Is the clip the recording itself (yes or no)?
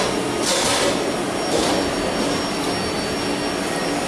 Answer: yes